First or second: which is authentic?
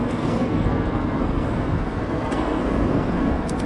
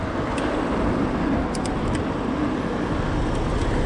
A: second